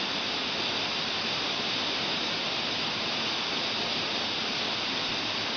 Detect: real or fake real